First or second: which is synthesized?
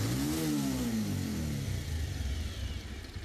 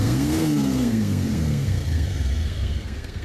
second